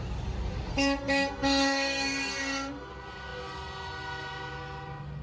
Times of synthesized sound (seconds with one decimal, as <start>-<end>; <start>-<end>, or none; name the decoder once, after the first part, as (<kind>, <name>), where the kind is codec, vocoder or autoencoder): 0.7-2.9 (codec, SNAC)